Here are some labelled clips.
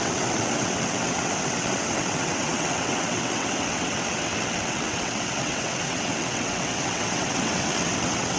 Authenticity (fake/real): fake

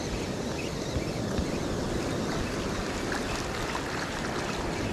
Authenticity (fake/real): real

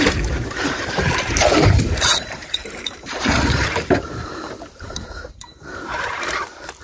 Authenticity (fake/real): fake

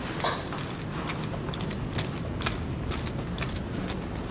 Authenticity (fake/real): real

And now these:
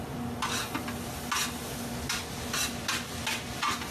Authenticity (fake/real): real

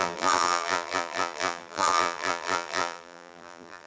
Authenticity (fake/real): fake